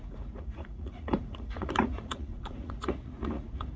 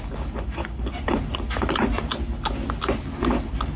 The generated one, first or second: first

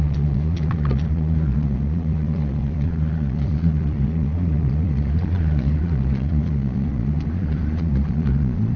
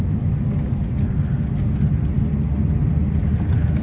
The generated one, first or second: first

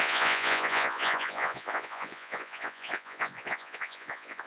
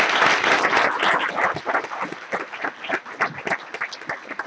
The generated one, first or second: first